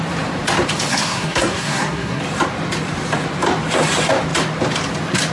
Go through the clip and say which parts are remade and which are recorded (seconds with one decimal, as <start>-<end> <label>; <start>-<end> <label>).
0.0-0.9 recorded; 0.9-2.2 remade; 2.2-5.3 recorded

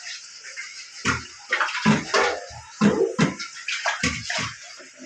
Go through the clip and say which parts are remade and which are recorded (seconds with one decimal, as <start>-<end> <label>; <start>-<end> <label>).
0.0-5.1 recorded